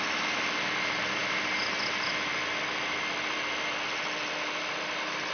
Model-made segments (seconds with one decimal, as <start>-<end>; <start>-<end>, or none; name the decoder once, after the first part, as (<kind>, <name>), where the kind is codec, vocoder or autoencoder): none